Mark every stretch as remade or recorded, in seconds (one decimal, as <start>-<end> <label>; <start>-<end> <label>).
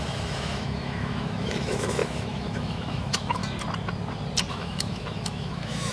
0.0-3.4 remade; 3.4-4.5 recorded; 4.5-5.9 remade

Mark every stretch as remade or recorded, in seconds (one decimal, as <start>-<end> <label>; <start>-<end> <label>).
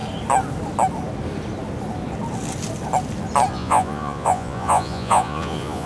0.0-3.5 recorded; 3.5-5.9 remade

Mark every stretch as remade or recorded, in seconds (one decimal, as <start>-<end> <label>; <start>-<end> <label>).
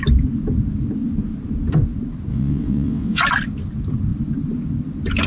0.0-2.3 recorded; 2.3-3.2 remade; 3.2-5.3 recorded